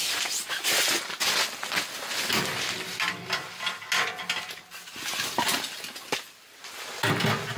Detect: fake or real real